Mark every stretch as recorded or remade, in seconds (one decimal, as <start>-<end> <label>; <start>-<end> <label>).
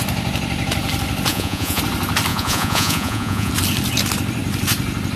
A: 0.0-1.3 recorded; 1.3-1.8 remade; 1.8-2.3 recorded; 2.3-3.5 remade; 3.5-5.2 recorded